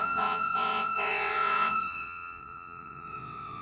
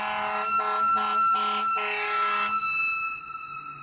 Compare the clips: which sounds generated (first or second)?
first